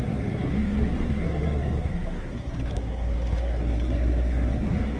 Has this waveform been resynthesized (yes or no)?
yes